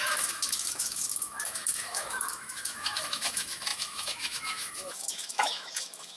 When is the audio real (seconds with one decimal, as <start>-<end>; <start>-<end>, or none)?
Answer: none